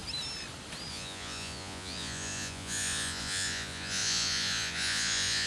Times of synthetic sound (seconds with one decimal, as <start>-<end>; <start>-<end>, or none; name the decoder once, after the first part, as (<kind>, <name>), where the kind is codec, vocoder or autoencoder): 0.9-5.5 (vocoder, Vocos)